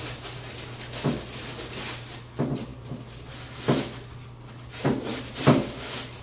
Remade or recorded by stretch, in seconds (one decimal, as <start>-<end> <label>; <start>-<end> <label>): 0.0-6.2 recorded